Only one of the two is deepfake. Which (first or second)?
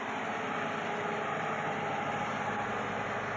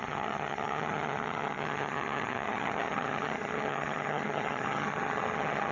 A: second